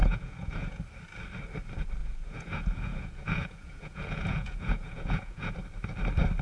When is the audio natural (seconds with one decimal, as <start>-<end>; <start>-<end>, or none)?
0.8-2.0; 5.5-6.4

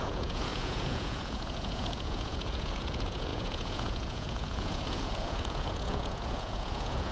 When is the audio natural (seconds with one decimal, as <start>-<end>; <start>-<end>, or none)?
none

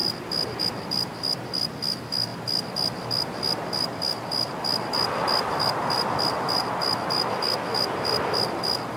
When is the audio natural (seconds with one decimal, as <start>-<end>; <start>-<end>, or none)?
0.0-9.0